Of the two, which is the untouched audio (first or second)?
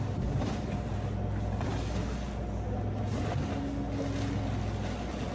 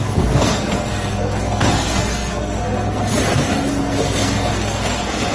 first